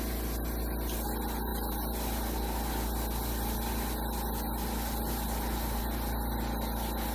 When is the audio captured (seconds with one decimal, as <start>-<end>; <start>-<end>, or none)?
0.0-7.1

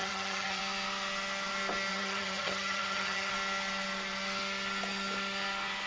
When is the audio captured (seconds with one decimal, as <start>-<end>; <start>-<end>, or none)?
0.6-1.9; 3.3-5.9

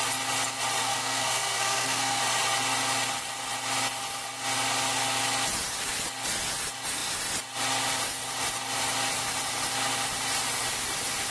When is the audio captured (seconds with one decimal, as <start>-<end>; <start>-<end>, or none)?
0.0-0.8; 2.2-11.3

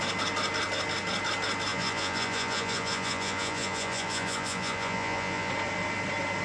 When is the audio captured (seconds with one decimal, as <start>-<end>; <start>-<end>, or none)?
0.0-1.7; 5.5-6.4